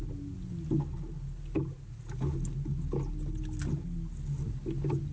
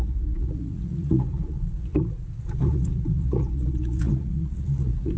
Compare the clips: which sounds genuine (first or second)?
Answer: first